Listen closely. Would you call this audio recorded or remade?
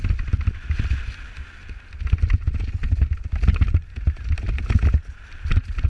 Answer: recorded